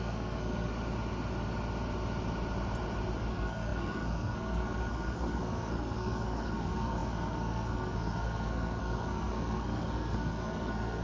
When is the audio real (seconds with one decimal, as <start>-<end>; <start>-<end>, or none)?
0.7-3.3